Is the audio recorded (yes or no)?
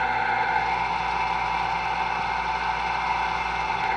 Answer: yes